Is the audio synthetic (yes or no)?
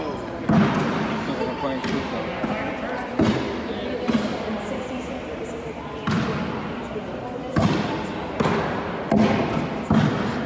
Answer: no